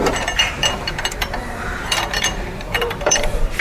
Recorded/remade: remade